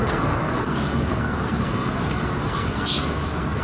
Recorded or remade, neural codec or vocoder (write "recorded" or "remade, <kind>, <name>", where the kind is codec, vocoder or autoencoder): remade, codec, SNAC